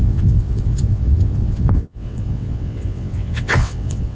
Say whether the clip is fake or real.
fake